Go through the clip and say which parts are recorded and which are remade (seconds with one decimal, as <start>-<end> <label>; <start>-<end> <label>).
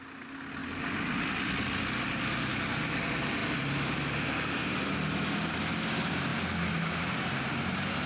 0.0-8.1 recorded